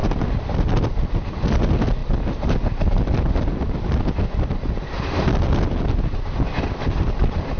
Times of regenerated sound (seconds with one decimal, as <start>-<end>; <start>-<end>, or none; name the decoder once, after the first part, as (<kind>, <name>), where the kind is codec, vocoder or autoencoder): none

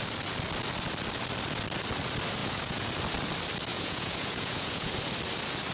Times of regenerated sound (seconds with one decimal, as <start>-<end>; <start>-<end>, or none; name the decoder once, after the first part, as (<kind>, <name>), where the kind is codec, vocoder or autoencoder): 2.4-2.9 (vocoder, Vocos); 3.7-4.9

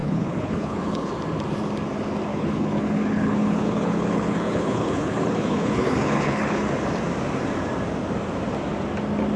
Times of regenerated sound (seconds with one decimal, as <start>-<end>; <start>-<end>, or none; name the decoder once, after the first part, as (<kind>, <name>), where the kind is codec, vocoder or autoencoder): 0.0-1.1 (codec, HILCodec); 2.3-6.7

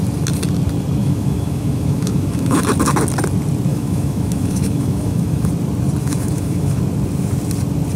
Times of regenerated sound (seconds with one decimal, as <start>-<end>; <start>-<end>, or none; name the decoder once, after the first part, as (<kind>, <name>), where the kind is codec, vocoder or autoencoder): 1.0-2.6 (autoencoder, DAC-VAE); 3.7-5.5; 6.0-6.8

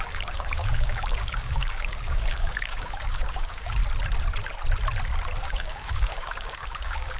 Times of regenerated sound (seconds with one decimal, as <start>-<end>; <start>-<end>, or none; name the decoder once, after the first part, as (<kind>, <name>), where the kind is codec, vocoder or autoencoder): 0.0-3.8 (codec, DAC); 5.4-7.2